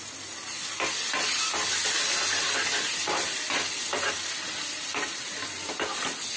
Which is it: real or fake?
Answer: real